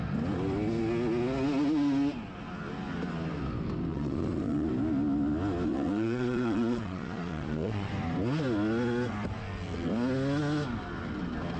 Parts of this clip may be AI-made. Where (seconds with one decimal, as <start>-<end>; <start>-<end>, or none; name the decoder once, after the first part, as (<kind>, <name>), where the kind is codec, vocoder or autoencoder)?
3.9-4.7 (vocoder, Vocos); 5.7-7.9